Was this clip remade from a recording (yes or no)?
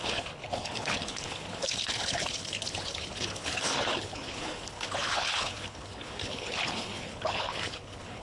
yes